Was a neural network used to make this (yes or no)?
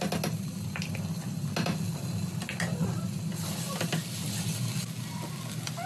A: no